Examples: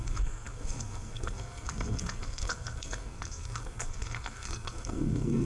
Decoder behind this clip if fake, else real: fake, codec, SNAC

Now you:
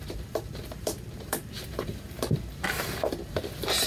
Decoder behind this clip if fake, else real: fake, vocoder, BigVGAN v2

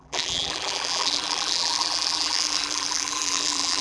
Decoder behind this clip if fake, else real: fake, vocoder, BigVGAN v2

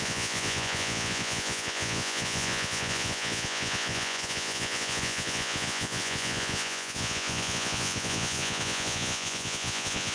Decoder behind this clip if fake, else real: fake, vocoder, Vocos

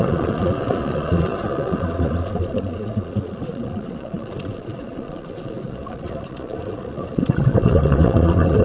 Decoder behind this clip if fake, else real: fake, vocoder, Vocos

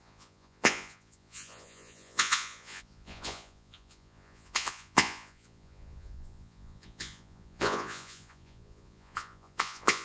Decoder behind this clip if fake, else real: fake, vocoder, Vocos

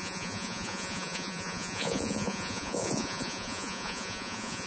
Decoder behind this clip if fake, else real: fake, vocoder, Vocos